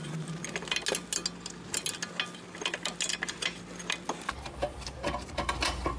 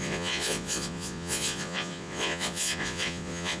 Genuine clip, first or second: first